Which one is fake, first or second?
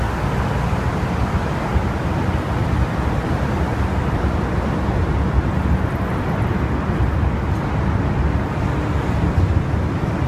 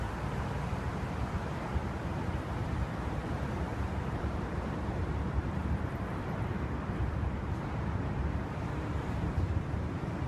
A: second